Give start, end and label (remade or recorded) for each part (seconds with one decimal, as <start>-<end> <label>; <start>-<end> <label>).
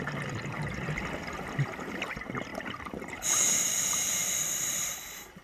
0.0-5.4 recorded